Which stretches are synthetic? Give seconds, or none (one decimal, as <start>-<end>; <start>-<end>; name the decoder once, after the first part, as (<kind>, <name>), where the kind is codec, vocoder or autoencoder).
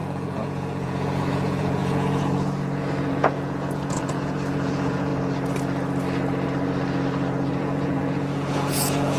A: 0.0-5.1 (vocoder, Vocos); 7.6-9.2